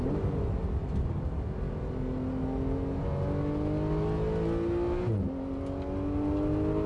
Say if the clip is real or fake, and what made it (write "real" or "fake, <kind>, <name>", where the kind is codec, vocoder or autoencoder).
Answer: real